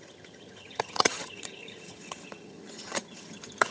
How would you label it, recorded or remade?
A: remade